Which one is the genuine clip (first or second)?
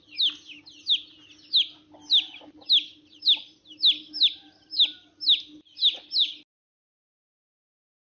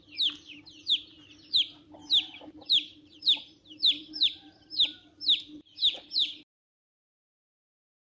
first